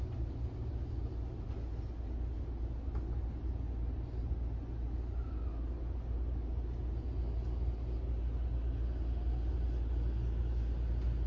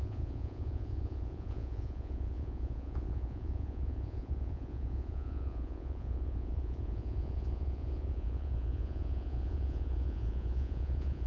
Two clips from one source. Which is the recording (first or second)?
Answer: first